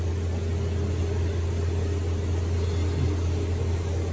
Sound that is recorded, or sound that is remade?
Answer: recorded